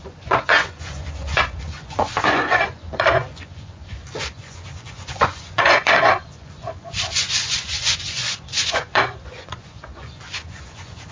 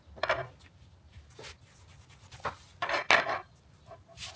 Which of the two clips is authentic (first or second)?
second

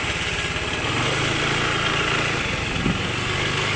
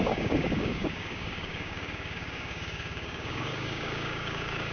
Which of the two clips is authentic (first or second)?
first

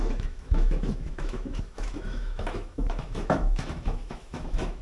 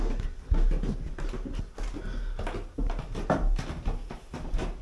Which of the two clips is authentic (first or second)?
second